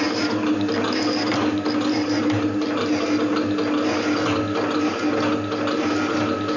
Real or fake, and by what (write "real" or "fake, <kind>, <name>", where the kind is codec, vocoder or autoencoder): real